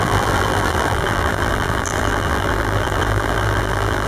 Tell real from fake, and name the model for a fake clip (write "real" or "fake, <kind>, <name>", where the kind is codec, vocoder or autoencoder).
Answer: fake, vocoder, BigVGAN v2